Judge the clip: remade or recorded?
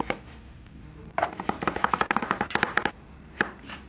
remade